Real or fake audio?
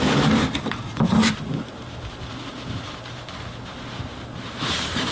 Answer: fake